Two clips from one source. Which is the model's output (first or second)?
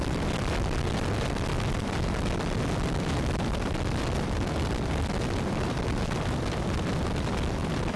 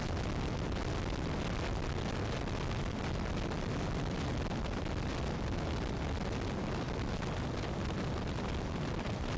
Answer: first